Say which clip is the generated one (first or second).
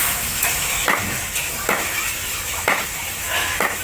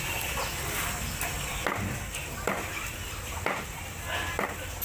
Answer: first